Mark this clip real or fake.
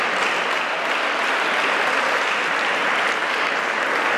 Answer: real